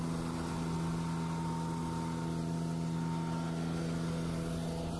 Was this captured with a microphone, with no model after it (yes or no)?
yes